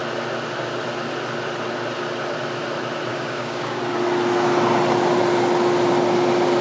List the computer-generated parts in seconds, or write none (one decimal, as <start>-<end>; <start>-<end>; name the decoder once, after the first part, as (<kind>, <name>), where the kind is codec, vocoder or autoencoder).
3.1-3.8 (codec, DAC)